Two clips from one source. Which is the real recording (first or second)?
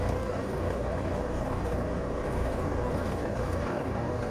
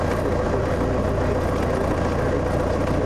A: second